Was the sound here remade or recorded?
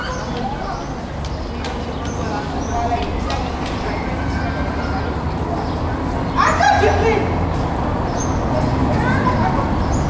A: recorded